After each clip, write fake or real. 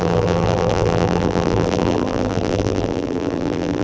fake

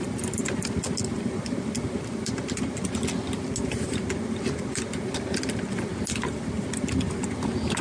real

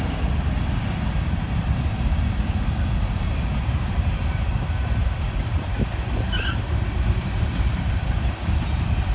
fake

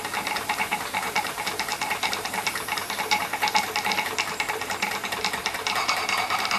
fake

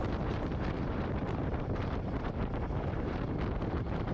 fake